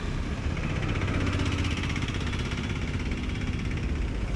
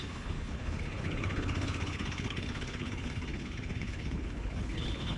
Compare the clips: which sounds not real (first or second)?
second